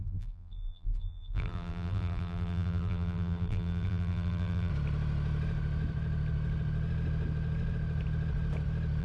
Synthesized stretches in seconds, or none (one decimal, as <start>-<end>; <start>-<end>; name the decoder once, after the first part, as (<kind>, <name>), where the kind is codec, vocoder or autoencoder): 0.0-4.7 (vocoder, BigVGAN v2)